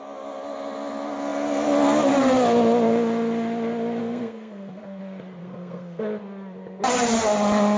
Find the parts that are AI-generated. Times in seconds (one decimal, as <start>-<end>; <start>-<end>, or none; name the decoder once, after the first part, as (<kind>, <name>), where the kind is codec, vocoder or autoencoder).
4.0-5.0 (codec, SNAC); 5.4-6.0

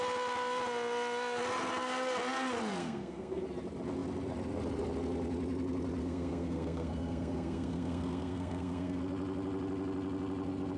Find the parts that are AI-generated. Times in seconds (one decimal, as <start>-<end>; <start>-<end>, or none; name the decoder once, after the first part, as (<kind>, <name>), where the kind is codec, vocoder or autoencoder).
2.8-3.4 (codec, SNAC); 6.0-9.0

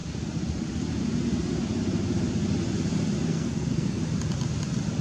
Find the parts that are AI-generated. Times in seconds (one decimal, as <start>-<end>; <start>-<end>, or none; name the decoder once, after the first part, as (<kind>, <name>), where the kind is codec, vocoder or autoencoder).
3.3-4.0 (codec, SNAC)

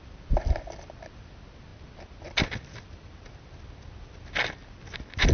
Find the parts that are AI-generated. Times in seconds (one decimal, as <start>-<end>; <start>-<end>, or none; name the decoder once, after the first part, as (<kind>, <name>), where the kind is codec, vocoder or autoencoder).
none